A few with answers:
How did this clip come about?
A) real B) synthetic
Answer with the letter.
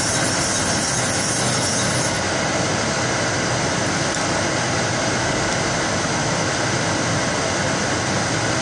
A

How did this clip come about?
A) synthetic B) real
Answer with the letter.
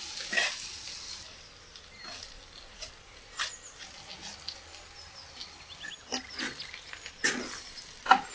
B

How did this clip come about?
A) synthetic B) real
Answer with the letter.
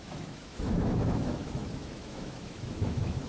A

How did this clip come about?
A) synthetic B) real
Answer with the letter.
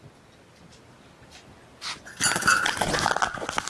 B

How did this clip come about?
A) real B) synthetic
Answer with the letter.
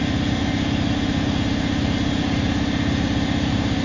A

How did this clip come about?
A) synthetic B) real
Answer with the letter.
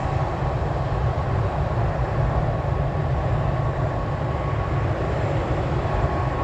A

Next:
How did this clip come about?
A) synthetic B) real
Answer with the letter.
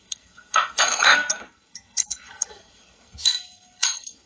A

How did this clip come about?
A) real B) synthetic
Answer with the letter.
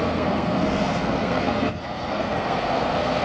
B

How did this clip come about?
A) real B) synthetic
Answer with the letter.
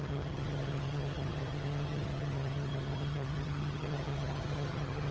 B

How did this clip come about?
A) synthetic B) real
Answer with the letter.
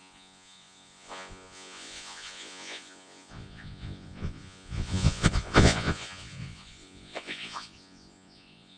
A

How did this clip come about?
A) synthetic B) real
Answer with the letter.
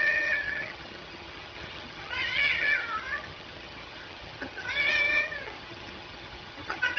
A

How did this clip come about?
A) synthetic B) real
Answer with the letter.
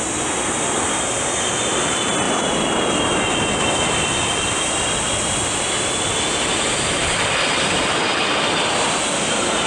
B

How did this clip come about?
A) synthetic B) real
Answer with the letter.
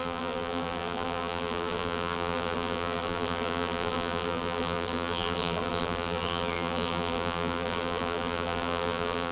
A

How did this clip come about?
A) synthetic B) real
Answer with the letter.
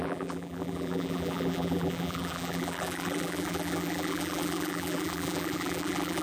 A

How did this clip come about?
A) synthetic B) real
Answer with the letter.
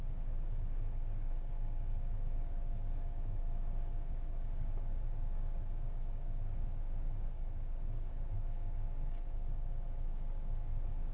A